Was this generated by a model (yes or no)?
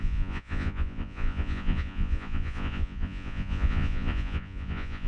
yes